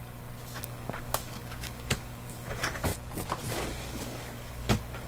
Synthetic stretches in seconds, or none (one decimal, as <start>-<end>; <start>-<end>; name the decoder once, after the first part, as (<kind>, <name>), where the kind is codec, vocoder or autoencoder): 0.0-2.9 (codec, DAC); 3.5-5.1